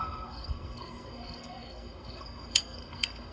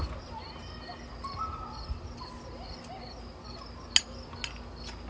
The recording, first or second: second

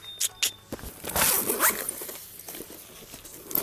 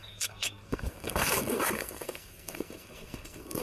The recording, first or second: first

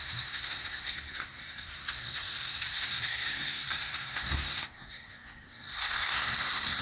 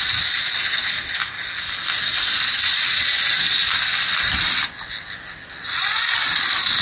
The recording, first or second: second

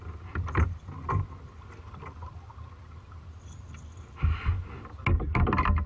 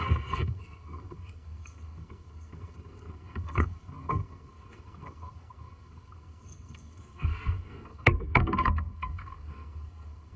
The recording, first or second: first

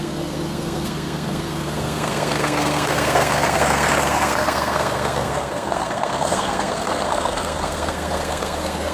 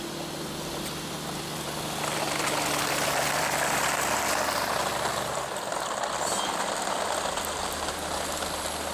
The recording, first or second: second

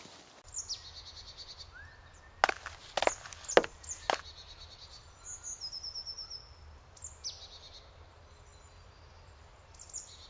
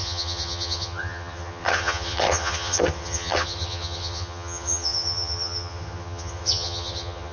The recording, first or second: first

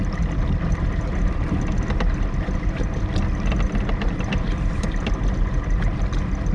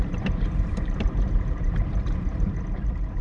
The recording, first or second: first